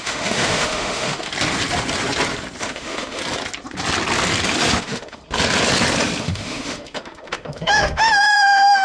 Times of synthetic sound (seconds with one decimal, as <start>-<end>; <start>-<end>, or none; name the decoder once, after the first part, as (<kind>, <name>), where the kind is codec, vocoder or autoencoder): 0.0-1.3 (autoencoder, DAC-VAE); 2.6-3.2; 4.8-5.2; 6.2-8.8